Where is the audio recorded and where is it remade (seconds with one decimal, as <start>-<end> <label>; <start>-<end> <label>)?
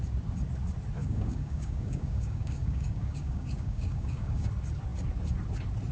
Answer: 0.0-1.0 recorded; 1.0-4.5 remade; 4.5-5.9 recorded